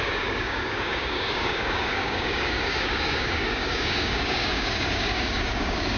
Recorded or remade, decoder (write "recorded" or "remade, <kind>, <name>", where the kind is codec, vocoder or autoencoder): remade, codec, DAC